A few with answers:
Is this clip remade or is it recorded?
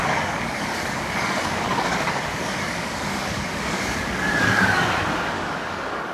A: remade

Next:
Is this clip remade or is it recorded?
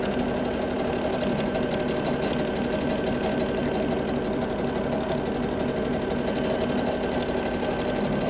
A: recorded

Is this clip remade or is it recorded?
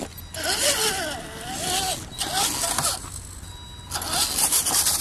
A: recorded